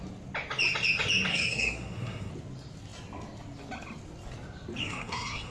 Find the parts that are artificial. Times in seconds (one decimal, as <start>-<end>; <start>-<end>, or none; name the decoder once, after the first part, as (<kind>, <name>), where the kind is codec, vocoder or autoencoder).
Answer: 1.3-2.3 (codec, SNAC); 4.8-5.5